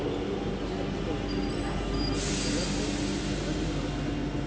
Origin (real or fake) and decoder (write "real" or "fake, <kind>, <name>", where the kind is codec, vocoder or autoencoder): real